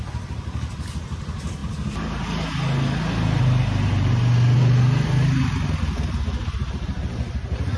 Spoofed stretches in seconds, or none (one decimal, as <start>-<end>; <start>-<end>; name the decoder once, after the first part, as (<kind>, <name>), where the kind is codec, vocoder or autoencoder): none